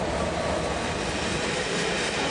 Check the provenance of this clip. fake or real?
real